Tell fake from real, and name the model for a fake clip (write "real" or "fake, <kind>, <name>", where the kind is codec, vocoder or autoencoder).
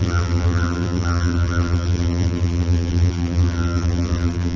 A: fake, vocoder, BigVGAN v2